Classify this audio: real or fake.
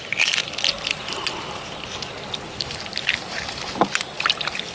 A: real